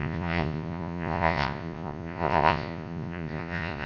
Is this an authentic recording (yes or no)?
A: no